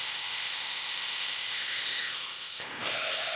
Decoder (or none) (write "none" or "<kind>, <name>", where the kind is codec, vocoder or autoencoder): codec, ZipCodec